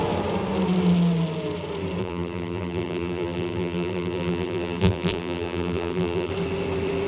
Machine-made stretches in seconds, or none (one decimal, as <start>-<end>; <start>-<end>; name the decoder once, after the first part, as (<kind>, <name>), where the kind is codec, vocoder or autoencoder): 2.0-6.3 (vocoder, BigVGAN v2)